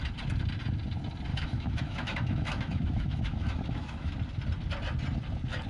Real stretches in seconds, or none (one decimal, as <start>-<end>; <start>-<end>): 0.0-1.3; 4.1-5.7